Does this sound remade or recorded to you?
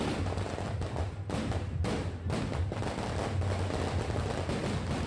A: recorded